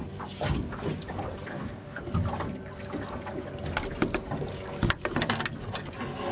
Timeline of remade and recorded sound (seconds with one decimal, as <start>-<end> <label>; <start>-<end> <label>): 0.0-1.5 recorded; 1.5-2.0 remade; 2.0-6.3 recorded